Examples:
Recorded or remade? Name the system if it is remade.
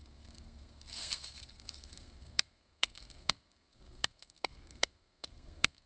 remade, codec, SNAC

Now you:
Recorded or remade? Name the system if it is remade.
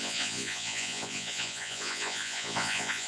remade, vocoder, Vocos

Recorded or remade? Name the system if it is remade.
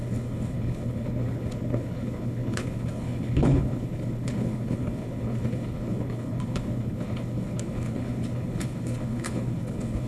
remade, codec, HILCodec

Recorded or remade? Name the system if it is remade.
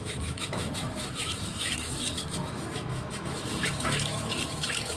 remade, autoencoder, DAC-VAE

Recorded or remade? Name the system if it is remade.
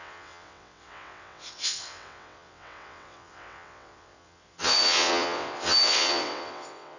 remade, vocoder, WaveNeXt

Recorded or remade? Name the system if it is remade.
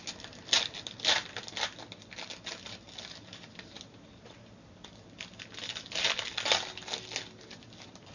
recorded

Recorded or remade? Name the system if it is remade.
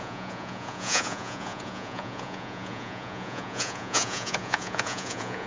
remade, vocoder, Vocos